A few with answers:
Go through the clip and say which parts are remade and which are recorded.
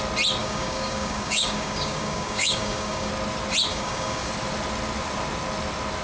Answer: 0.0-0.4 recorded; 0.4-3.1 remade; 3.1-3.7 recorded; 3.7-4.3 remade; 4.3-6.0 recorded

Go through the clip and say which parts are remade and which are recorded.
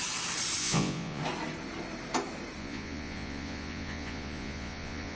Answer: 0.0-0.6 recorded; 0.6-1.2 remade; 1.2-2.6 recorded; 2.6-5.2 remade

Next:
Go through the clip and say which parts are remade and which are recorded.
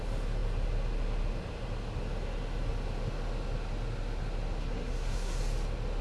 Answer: 0.0-4.6 recorded; 4.6-5.4 remade; 5.4-6.0 recorded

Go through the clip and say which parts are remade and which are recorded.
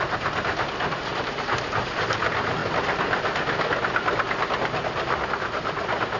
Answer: 0.0-1.1 remade; 1.1-2.1 recorded; 2.1-2.6 remade; 2.6-5.3 recorded; 5.3-6.2 remade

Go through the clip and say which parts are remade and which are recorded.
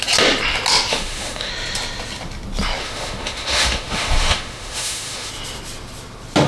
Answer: 0.0-0.9 recorded; 0.9-1.5 remade; 1.5-2.8 recorded; 2.8-5.3 remade; 5.3-6.5 recorded